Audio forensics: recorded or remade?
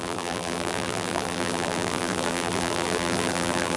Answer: remade